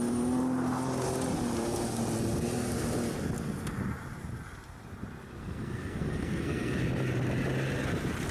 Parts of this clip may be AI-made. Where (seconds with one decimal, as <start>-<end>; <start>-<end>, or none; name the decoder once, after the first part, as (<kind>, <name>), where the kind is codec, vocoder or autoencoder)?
5.4-6.8 (codec, SNAC)